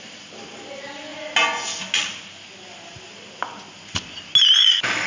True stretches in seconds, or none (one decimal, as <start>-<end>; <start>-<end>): 0.0-5.1